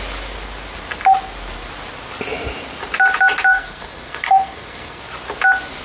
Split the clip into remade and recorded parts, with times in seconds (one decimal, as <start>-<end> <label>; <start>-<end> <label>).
0.0-3.5 recorded; 3.5-5.0 remade; 5.0-5.8 recorded